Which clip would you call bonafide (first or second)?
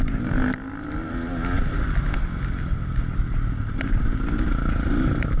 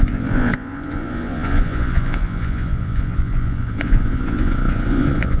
first